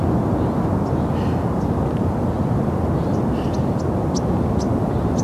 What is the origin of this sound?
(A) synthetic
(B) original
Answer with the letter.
B